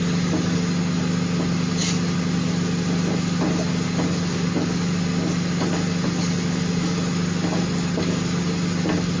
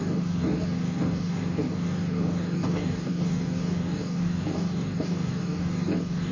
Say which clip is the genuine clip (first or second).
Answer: first